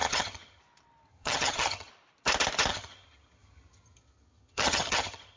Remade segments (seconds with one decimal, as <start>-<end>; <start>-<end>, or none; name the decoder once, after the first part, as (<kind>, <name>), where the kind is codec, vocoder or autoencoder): 0.0-0.6 (vocoder, HiFi-GAN); 1.1-1.9; 2.7-5.4